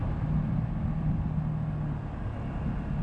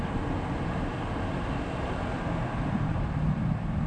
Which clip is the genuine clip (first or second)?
first